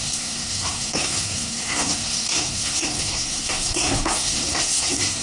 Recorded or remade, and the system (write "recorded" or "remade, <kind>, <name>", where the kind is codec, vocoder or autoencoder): remade, codec, SNAC